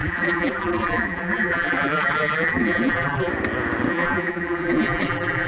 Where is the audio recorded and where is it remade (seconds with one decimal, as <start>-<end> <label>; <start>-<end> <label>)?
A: 0.0-3.3 remade; 3.3-3.9 recorded; 3.9-5.5 remade